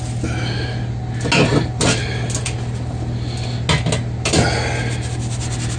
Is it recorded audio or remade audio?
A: recorded